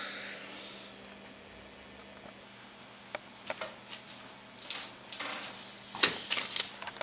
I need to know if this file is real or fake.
real